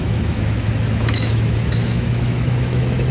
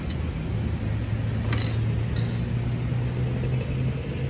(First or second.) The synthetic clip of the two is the first